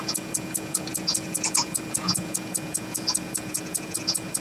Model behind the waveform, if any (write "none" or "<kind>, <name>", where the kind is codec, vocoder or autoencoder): vocoder, Vocos